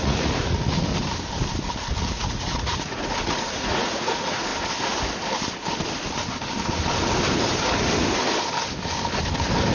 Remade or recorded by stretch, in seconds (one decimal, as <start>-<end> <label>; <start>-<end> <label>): 0.0-0.9 remade; 0.9-2.0 recorded; 2.0-4.5 remade; 4.5-9.7 recorded